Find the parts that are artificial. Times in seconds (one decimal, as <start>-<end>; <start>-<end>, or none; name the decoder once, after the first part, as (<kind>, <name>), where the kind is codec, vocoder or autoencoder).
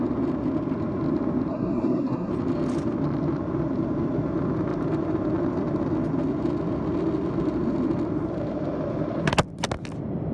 1.5-2.3 (codec, SNAC)